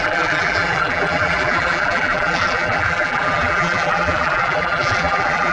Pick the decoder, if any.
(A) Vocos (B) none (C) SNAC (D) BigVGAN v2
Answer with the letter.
D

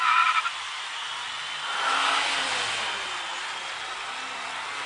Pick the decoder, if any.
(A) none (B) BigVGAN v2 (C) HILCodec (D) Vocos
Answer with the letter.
A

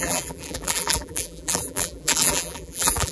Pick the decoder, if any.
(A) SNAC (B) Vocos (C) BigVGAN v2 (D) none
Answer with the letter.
C